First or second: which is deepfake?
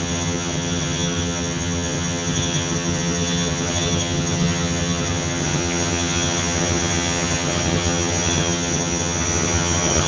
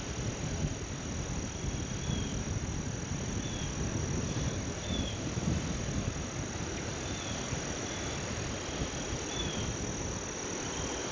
first